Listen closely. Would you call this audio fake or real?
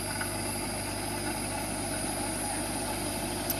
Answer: real